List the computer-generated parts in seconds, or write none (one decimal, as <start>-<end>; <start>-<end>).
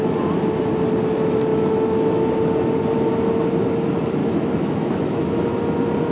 1.5-2.1; 4.2-5.4